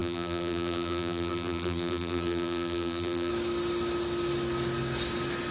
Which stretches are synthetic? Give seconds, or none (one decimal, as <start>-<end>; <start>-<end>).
0.0-3.3